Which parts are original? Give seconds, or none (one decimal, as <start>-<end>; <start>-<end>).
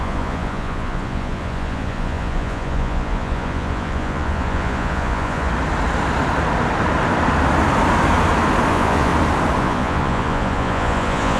5.5-8.7; 9.1-9.6